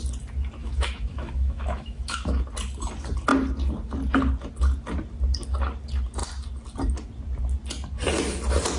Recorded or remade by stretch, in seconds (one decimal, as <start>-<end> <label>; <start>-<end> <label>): 0.0-0.6 recorded; 0.6-2.4 remade; 2.4-8.8 recorded